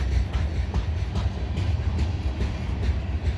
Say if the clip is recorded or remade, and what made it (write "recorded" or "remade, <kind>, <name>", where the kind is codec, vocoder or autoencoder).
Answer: recorded